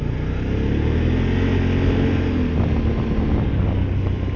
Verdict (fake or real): real